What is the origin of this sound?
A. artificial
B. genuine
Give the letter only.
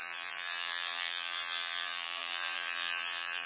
A